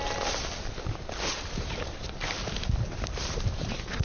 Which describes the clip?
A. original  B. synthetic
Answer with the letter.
A